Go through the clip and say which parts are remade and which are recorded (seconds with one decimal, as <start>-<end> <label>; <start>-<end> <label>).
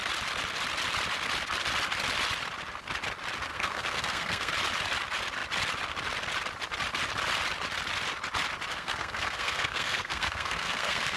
0.0-3.5 recorded; 3.5-4.5 remade; 4.5-8.7 recorded; 8.7-11.2 remade